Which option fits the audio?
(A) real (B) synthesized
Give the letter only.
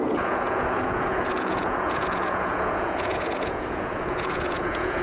B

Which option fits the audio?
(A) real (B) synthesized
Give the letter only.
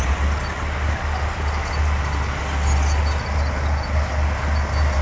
A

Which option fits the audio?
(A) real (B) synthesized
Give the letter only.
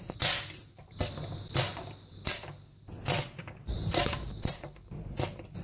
A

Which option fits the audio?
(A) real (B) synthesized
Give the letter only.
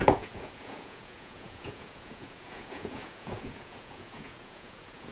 B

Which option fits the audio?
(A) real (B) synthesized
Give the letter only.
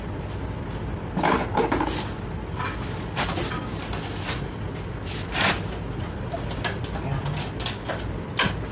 A